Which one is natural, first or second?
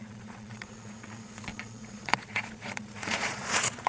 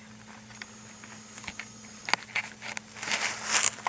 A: second